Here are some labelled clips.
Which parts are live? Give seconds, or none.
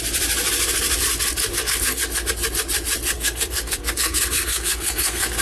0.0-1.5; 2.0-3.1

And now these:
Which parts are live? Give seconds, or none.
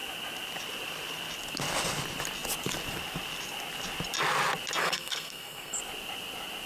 0.0-4.8; 5.8-6.7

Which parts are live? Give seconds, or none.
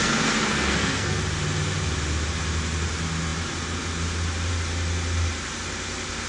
1.2-6.3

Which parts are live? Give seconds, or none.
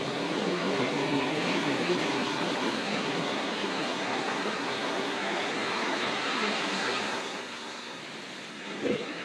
8.0-8.5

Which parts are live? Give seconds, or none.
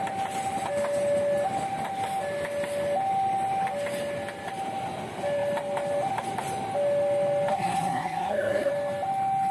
0.0-7.5; 8.7-9.5